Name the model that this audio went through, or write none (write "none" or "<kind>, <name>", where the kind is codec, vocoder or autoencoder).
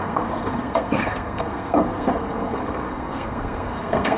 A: codec, SNAC